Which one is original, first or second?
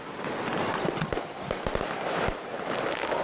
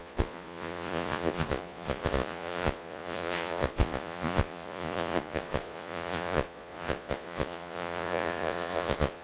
first